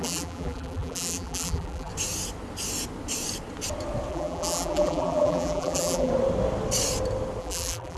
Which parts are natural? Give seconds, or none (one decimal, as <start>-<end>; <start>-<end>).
1.9-4.1; 6.1-7.4